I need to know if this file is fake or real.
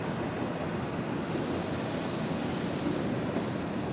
real